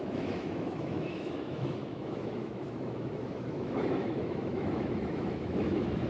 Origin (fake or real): fake